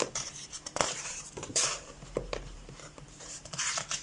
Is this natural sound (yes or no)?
no